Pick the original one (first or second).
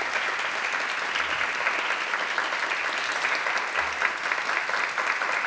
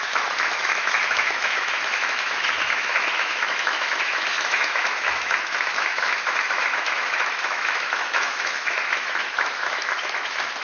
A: first